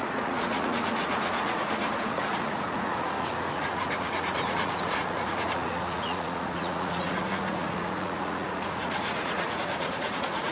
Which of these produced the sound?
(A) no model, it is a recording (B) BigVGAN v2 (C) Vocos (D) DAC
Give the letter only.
C